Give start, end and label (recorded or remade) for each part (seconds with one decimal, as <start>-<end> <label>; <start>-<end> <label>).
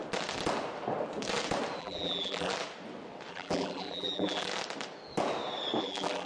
0.0-1.8 recorded; 1.8-2.5 remade; 2.5-3.3 recorded; 3.3-4.5 remade; 4.5-5.8 recorded; 5.8-6.3 remade